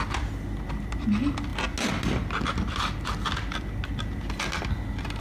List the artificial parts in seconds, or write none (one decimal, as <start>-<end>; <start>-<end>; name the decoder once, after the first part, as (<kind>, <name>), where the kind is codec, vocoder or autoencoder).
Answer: none